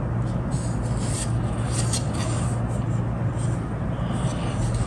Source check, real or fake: real